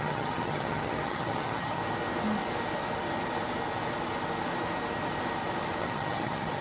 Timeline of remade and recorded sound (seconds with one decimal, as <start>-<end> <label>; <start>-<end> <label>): 0.0-1.8 remade; 1.8-5.8 recorded; 5.8-6.6 remade